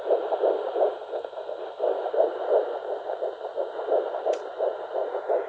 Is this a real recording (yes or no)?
yes